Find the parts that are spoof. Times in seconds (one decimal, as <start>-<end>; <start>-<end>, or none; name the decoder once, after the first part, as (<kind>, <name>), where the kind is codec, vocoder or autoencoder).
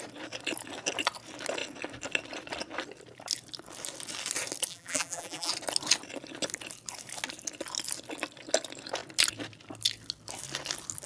4.7-5.5 (vocoder, BigVGAN v2)